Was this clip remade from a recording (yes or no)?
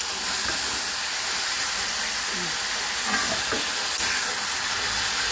no